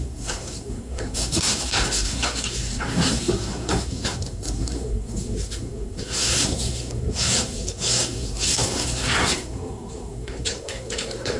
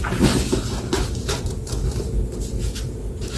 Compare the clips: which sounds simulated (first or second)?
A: first